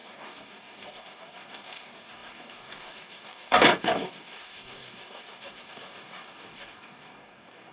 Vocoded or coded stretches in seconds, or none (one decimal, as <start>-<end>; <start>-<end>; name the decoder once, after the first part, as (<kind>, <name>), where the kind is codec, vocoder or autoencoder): 0.0-7.7 (codec, DAC)

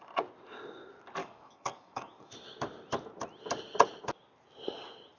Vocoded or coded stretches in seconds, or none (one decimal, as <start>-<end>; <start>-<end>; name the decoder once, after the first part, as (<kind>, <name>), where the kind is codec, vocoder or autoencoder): 1.2-2.3 (codec, DAC)

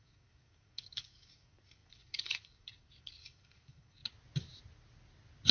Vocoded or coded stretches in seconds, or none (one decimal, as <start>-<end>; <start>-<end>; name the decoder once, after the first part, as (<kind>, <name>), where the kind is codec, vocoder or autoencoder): 0.0-4.0 (codec, DAC)